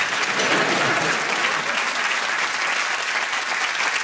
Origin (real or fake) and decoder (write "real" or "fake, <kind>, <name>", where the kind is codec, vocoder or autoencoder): real